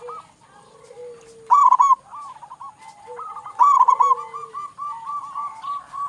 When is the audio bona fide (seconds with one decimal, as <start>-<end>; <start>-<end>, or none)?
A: 0.0-6.1